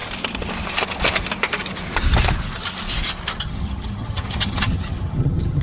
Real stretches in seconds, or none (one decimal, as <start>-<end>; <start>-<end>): 0.0-3.4